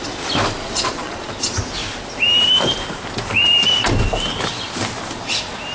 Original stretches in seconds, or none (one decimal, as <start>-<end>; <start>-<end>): 0.0-0.6; 1.3-5.7

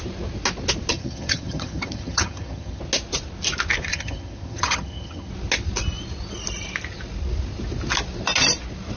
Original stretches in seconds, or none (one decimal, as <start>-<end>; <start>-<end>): 0.0-0.9; 2.8-3.9; 5.3-9.0

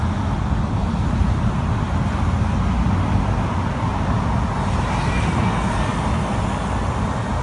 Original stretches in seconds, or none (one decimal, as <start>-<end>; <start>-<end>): 0.0-7.4

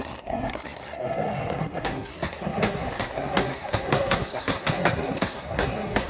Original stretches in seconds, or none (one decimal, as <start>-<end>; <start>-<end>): none

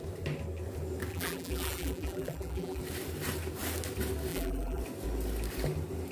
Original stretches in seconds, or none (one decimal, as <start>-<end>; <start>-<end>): 0.0-1.1; 2.8-4.3; 4.8-6.1

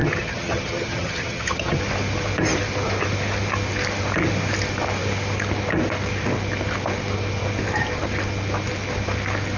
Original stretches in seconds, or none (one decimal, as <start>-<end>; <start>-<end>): 1.8-9.6

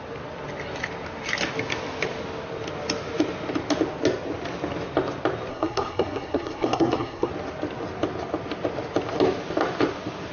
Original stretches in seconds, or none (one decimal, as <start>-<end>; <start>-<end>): 0.0-5.5; 7.3-10.3